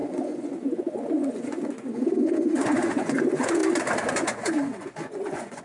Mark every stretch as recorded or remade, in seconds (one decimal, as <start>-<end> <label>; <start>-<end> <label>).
0.0-3.6 remade; 3.6-4.1 recorded; 4.1-5.6 remade